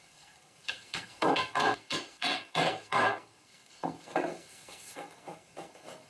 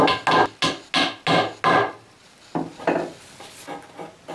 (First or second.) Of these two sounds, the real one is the second